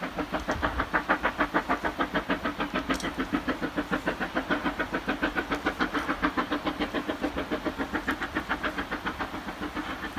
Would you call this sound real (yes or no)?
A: yes